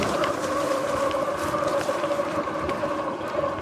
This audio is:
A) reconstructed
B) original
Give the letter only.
B